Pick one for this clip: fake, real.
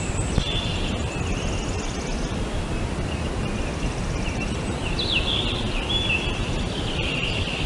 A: real